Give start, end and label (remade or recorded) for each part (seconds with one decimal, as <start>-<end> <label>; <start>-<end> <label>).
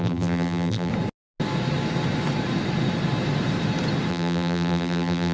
0.0-0.9 remade; 0.9-4.1 recorded; 4.1-5.3 remade